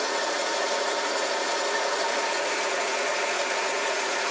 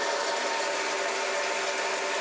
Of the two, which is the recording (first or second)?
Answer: second